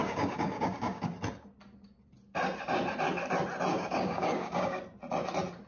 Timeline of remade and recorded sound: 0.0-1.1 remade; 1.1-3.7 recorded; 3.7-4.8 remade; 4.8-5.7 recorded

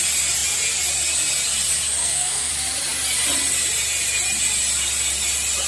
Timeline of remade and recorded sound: 0.0-2.0 recorded; 2.0-2.5 remade; 2.5-5.7 recorded

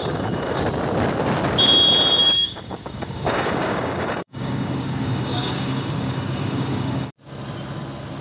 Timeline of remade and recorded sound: 0.0-0.6 remade; 0.6-2.2 recorded; 2.2-7.1 remade; 7.1-8.2 recorded

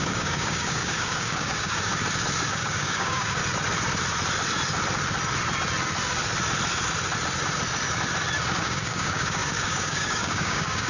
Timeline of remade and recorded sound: 0.0-1.9 remade; 1.9-2.5 recorded; 2.5-3.4 remade; 3.4-8.6 recorded; 8.6-10.9 remade

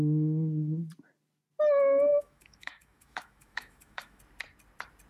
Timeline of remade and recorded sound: 0.0-2.1 recorded; 2.1-4.2 remade; 4.2-5.1 recorded

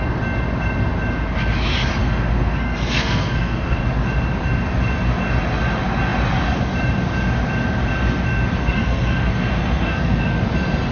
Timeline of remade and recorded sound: 0.0-2.0 recorded; 2.0-3.8 remade; 3.8-8.6 recorded; 8.6-10.4 remade; 10.4-10.9 recorded